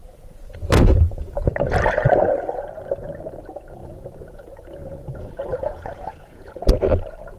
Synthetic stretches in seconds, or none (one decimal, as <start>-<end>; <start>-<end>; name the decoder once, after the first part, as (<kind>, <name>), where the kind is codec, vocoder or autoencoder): 0.0-1.5 (vocoder, Vocos); 3.8-6.5